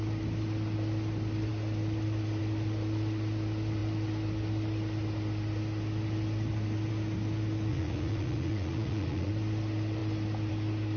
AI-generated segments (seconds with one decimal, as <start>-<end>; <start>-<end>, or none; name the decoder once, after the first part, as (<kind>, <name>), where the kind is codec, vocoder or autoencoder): 7.7-9.3 (vocoder, Vocos)